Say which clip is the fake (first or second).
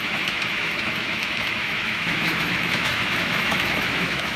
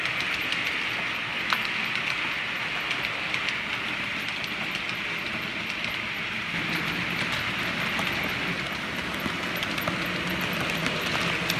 first